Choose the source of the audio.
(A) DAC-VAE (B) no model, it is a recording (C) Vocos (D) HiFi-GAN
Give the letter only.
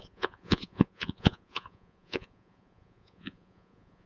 C